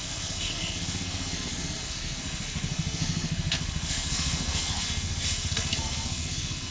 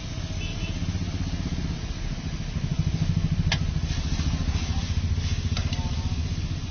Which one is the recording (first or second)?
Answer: second